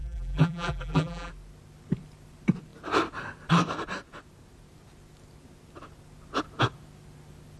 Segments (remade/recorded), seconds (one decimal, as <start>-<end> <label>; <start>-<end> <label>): 0.0-1.3 remade; 1.3-7.6 recorded